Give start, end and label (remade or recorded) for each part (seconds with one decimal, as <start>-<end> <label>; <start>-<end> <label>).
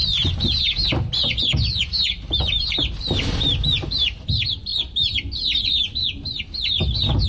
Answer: 0.0-7.3 recorded